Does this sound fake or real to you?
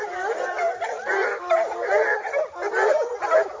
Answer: real